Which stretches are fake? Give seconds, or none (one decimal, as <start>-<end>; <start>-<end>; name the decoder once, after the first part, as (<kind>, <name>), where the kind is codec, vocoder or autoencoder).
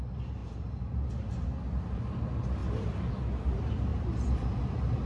2.6-3.1 (vocoder, BigVGAN v2)